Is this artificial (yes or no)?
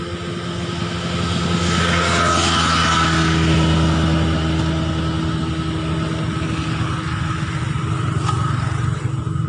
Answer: no